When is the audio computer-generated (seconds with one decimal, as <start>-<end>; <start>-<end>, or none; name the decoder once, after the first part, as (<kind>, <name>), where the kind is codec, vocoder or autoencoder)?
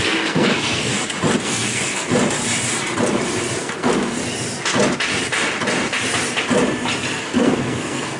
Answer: 0.0-0.9 (codec, SNAC); 1.4-2.1; 3.6-4.2; 7.2-8.2